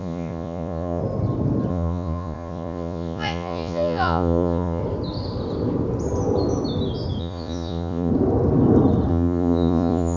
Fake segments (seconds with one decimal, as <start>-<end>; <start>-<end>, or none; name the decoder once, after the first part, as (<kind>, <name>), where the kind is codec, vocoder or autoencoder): 0.0-1.0 (vocoder, Vocos); 1.7-4.8; 7.2-8.1; 9.1-10.2